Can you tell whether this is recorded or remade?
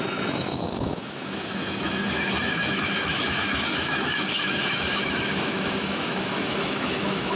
remade